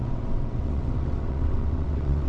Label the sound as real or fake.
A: fake